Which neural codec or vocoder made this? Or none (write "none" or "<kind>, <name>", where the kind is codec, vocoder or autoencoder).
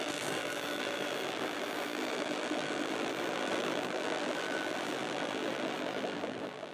vocoder, BigVGAN v2